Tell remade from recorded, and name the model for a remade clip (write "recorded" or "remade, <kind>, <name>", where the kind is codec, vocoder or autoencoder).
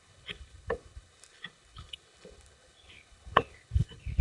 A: remade, codec, HILCodec